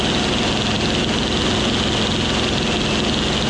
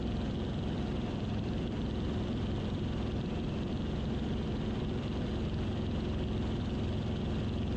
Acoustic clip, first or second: first